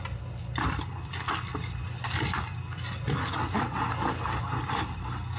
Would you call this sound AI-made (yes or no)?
no